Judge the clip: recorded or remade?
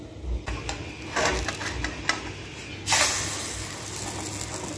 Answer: recorded